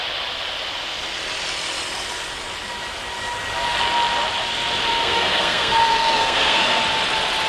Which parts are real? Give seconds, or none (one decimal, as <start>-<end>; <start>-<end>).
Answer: 0.0-4.9; 6.8-7.5